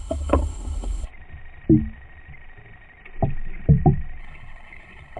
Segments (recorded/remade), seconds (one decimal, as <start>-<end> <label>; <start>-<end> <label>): 0.0-1.1 remade; 1.1-4.2 recorded; 4.2-5.2 remade

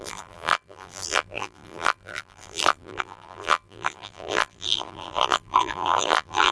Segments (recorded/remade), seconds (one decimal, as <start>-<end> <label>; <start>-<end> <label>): 0.0-6.5 remade

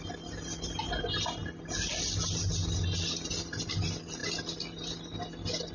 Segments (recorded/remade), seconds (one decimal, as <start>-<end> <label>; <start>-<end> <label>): 0.0-5.7 recorded

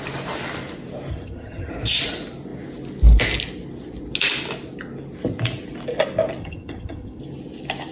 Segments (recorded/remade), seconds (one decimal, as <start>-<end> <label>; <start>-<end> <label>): 0.0-1.1 recorded; 1.1-1.7 remade; 1.7-6.4 recorded; 6.4-7.2 remade; 7.2-7.9 recorded

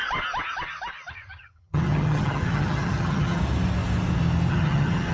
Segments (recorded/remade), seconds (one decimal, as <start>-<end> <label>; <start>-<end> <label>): 0.0-1.1 recorded; 1.1-3.4 remade; 3.4-4.5 recorded; 4.5-5.1 remade

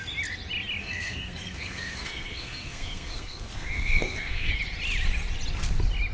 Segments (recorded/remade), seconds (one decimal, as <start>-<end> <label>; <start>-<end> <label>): 0.0-0.8 recorded; 0.8-4.5 remade; 4.5-6.1 recorded

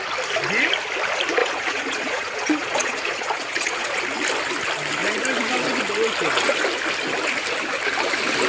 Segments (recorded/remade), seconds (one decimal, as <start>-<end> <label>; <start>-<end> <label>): 0.0-1.4 recorded; 1.4-4.0 remade; 4.0-8.5 recorded